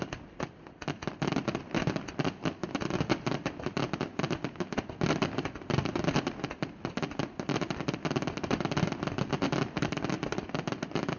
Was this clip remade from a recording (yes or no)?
no